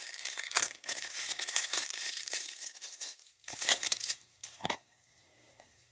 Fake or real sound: fake